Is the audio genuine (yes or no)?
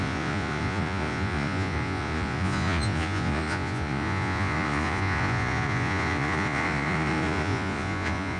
no